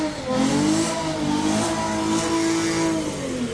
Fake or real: real